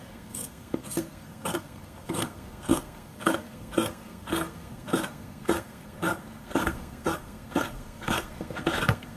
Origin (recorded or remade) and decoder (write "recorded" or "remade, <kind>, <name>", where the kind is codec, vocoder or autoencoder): remade, codec, SNAC